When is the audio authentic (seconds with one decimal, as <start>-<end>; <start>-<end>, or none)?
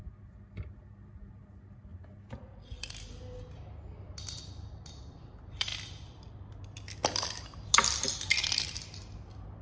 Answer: 0.0-9.6